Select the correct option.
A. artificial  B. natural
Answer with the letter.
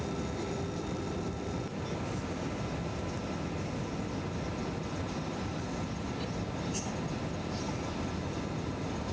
B